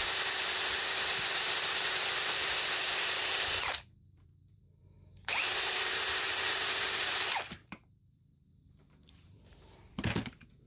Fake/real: fake